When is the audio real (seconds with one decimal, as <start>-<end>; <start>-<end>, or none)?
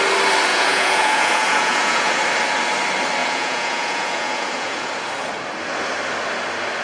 0.0-0.5; 2.2-3.2; 4.9-6.8